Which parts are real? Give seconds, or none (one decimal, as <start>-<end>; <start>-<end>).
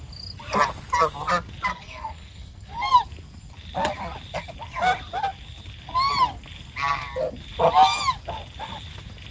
0.0-1.7; 2.9-9.3